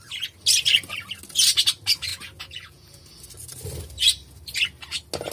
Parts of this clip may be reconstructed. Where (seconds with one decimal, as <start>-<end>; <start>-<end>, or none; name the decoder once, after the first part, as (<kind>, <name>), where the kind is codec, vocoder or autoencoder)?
2.1-3.0 (vocoder, Vocos)